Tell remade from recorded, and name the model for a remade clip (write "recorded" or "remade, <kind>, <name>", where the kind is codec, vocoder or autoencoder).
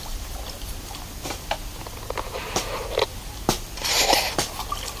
recorded